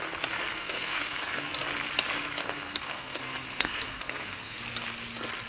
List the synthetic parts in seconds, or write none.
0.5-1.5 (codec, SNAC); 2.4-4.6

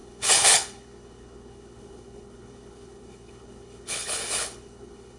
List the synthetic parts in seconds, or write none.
0.0-5.2 (codec, HILCodec)